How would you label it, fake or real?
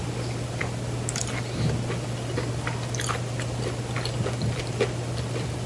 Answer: real